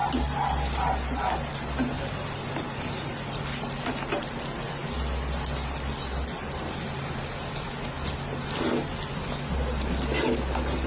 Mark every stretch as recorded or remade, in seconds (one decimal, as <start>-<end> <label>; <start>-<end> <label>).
0.0-10.9 recorded